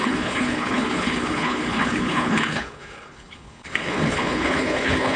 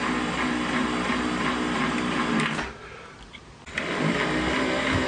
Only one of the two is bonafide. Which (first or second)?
second